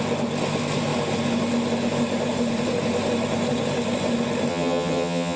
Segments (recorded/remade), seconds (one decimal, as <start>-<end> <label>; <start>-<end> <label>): 0.0-4.5 recorded; 4.5-5.4 remade